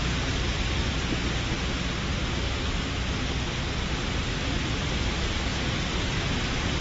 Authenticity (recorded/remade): recorded